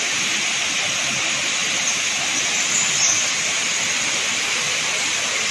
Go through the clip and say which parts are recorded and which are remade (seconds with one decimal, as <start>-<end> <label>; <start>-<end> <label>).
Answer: 0.0-5.5 recorded